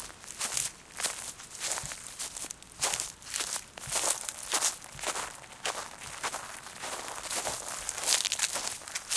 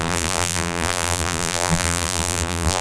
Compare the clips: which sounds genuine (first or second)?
first